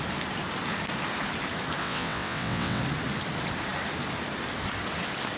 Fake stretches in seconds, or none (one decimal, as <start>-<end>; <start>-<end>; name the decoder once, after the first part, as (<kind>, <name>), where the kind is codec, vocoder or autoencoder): 1.8-2.8 (vocoder, WaveNeXt)